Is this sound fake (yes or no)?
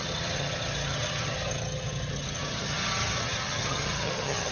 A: yes